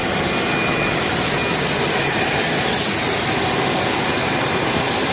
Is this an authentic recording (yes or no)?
yes